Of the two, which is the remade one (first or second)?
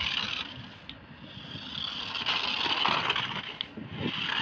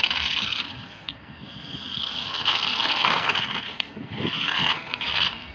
second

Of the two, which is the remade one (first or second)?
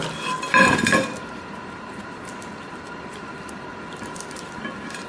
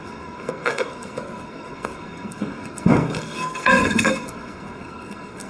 second